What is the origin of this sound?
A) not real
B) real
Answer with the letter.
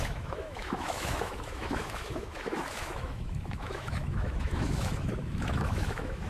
A